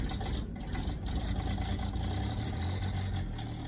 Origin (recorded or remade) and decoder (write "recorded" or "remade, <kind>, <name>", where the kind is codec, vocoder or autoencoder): recorded